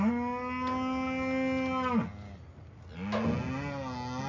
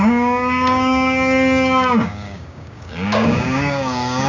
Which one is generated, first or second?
second